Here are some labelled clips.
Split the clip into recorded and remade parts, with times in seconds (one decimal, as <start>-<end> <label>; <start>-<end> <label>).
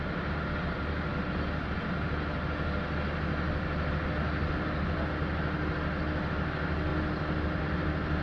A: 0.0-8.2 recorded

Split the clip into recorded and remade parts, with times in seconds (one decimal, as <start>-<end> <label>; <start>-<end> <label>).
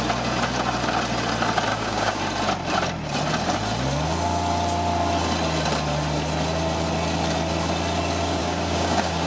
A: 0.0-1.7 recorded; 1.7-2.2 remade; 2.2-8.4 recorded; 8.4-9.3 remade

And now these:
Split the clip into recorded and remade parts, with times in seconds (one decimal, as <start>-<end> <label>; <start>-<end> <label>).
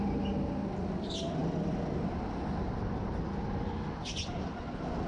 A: 0.0-5.1 recorded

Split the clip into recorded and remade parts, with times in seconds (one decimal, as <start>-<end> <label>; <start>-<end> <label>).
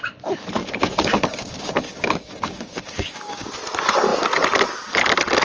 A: 0.0-0.6 recorded; 0.6-3.5 remade; 3.5-5.4 recorded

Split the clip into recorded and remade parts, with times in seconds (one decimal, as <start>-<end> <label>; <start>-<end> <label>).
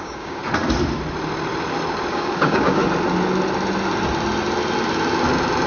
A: 0.0-0.4 remade; 0.4-2.1 recorded; 2.1-2.8 remade; 2.8-5.7 recorded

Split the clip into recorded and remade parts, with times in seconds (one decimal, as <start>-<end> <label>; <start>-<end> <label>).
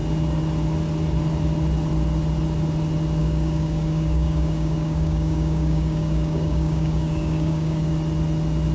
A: 0.0-3.2 recorded; 3.2-7.9 remade; 7.9-8.7 recorded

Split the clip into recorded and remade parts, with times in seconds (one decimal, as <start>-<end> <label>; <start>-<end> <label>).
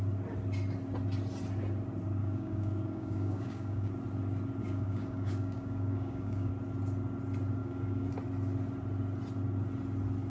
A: 0.0-2.2 recorded; 2.2-3.9 remade; 3.9-4.6 recorded; 4.6-6.5 remade; 6.5-7.6 recorded; 7.6-8.1 remade; 8.1-10.3 recorded